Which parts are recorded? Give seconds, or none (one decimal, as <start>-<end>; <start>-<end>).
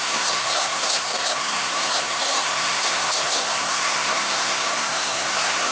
none